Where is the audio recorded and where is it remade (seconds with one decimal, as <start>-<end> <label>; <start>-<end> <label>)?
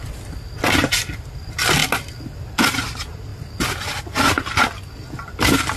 0.0-5.8 recorded